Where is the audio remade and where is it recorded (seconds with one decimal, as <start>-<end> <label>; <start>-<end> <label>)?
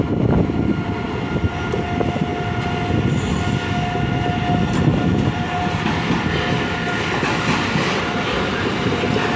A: 0.0-9.4 recorded